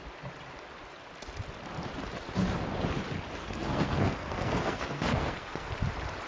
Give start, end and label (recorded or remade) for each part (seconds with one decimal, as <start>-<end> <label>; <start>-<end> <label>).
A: 0.0-3.4 recorded; 3.4-5.7 remade; 5.7-6.3 recorded